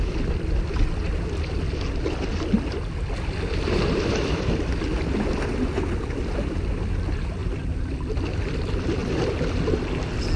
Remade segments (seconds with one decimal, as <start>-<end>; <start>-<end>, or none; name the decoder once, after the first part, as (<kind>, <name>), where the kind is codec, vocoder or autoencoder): none